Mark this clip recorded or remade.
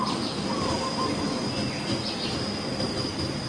recorded